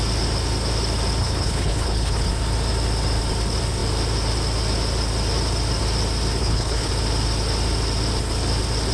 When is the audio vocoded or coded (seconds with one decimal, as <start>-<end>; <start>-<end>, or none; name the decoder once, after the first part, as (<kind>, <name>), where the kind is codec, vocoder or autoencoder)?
1.2-2.3 (codec, HILCodec); 6.4-6.9